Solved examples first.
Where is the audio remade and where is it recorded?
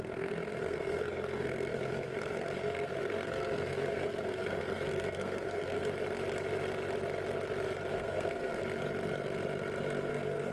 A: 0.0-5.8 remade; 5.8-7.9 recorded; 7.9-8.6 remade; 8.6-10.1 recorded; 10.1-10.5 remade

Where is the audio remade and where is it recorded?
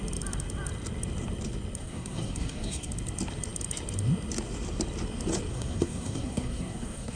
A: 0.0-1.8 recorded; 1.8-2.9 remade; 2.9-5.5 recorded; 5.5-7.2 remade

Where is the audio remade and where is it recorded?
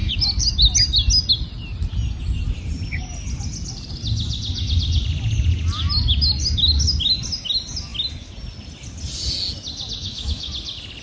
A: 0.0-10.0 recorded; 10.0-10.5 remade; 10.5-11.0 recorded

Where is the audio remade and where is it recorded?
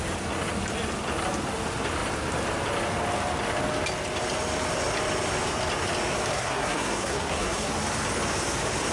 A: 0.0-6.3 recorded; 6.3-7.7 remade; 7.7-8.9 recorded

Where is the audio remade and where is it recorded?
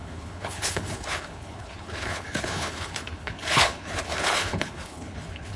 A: 0.0-5.6 remade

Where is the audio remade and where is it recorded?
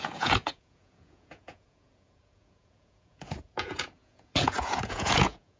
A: 0.0-5.6 remade